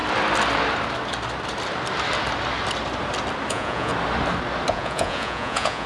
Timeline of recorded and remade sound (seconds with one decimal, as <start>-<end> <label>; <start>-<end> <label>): 0.0-3.5 recorded; 3.5-3.9 remade; 3.9-4.7 recorded; 4.7-5.9 remade